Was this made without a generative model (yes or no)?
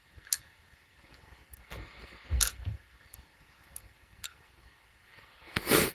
no